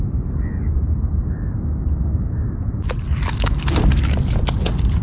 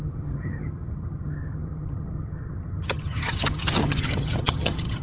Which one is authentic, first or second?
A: first